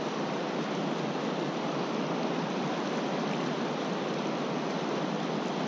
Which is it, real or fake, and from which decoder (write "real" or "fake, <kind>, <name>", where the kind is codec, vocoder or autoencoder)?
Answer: real